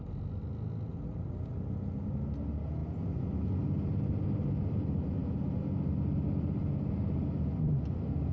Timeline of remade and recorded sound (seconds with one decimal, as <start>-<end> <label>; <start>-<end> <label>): 0.0-8.3 recorded